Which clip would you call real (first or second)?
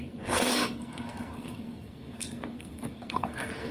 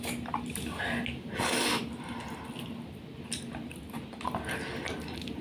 second